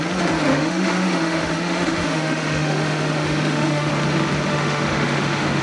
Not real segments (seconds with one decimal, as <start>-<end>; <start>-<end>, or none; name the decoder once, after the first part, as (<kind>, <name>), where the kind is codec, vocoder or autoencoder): 0.5-3.9 (autoencoder, DAC-VAE); 4.5-5.6